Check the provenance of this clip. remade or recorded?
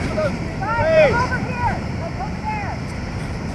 remade